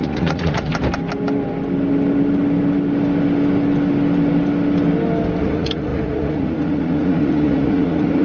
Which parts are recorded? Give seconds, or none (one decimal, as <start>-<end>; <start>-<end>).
0.7-5.4